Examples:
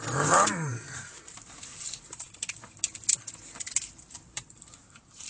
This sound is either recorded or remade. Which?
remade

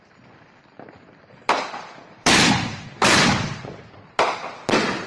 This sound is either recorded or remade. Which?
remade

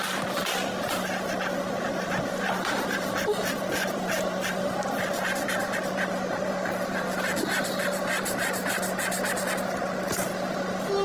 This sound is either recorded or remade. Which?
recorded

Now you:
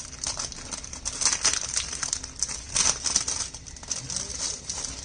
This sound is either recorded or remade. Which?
recorded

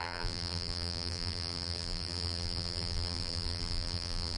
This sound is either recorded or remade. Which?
remade